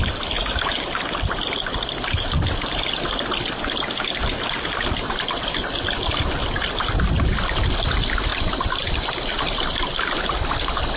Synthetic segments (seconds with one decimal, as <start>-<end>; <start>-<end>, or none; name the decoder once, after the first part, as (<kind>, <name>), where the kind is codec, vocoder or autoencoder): none